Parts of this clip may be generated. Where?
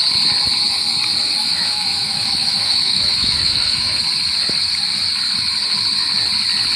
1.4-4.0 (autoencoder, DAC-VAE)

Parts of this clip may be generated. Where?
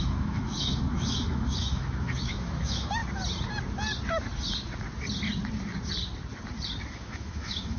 0.0-3.0 (autoencoder, DAC-VAE); 6.8-7.8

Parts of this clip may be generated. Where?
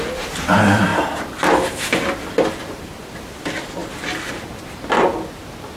none